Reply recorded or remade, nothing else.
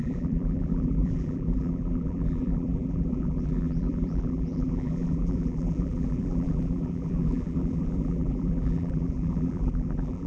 remade